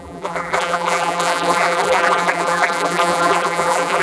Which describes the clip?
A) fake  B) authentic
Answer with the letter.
A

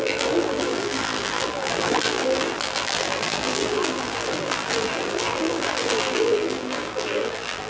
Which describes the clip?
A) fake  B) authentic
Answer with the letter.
A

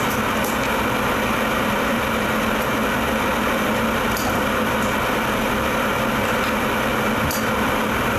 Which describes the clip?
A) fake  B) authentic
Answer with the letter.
B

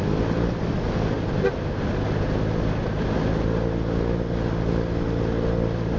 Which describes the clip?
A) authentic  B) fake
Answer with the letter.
A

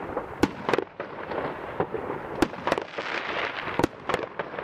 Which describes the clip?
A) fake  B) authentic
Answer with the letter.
B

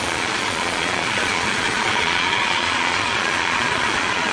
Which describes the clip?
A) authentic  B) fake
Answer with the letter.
B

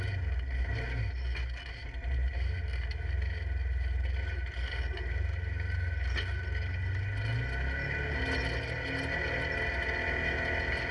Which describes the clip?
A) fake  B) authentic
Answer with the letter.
B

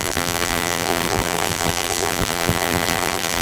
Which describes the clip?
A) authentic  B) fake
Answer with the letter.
B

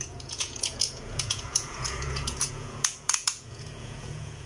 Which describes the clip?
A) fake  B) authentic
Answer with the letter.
A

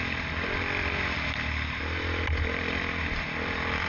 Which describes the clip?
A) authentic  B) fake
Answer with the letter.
A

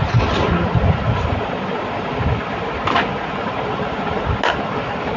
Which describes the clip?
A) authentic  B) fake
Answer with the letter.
A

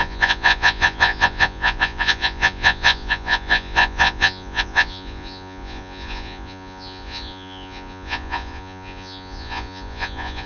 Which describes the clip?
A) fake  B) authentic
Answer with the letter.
A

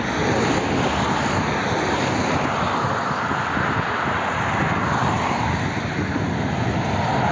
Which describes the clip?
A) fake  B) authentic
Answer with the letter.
B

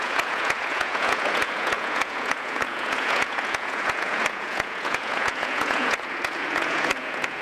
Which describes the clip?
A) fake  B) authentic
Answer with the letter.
A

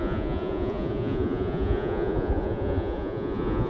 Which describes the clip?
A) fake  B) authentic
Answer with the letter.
A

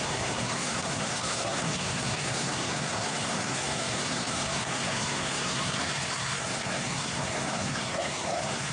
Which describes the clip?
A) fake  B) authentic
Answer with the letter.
A